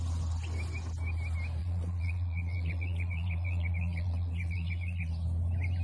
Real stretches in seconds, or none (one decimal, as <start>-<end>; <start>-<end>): 0.0-1.6; 5.1-5.8